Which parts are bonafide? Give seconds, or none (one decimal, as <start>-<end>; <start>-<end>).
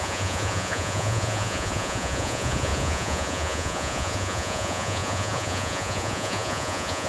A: none